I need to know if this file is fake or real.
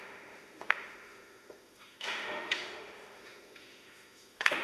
fake